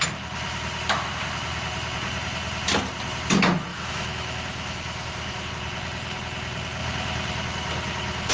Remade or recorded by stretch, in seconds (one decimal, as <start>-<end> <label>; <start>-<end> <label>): 0.0-3.7 recorded; 3.7-5.5 remade; 5.5-8.3 recorded